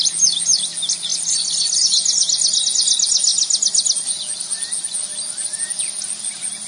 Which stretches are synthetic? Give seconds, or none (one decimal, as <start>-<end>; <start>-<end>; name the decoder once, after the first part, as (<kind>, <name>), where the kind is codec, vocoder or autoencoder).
none